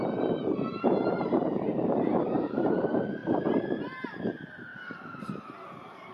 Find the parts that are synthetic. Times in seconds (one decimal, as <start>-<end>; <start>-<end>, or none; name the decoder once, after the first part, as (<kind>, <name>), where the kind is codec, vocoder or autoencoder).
0.0-6.1 (vocoder, BigVGAN v2)